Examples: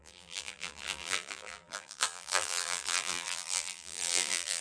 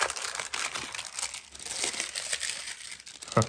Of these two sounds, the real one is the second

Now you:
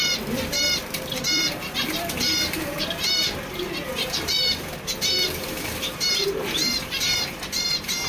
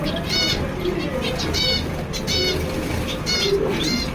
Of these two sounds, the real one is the second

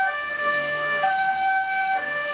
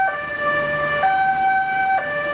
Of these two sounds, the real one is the second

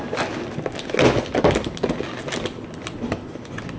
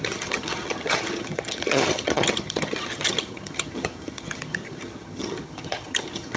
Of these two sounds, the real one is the first